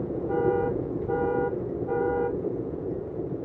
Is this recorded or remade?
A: remade